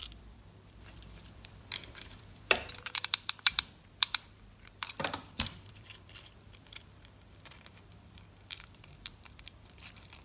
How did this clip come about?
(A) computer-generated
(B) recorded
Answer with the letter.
A